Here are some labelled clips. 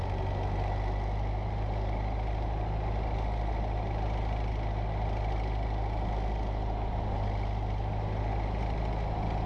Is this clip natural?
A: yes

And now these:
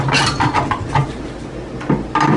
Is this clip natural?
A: yes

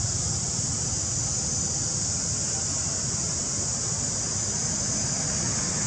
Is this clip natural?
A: yes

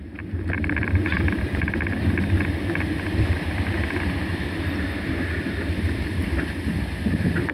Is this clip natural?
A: no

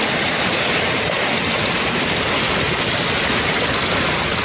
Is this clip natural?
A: yes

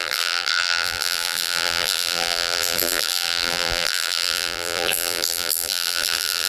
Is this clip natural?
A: no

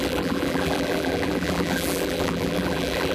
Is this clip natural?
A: no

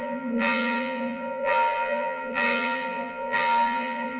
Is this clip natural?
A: no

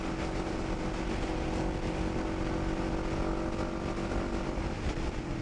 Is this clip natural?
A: yes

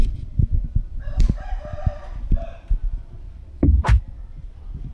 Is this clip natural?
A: no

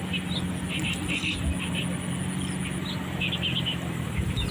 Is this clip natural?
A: yes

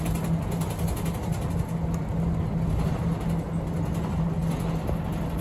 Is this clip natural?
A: yes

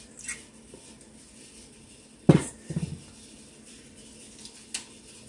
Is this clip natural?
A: yes